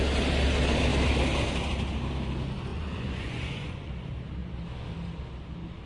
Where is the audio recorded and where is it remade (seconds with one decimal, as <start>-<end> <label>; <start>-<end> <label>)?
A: 0.0-2.7 recorded; 2.7-3.9 remade; 3.9-5.9 recorded